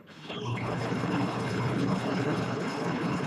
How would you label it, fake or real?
fake